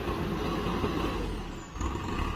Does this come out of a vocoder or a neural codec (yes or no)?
no